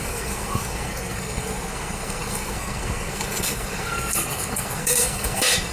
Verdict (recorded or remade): remade